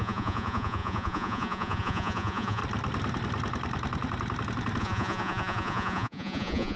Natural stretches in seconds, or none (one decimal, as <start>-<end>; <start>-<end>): 2.6-4.8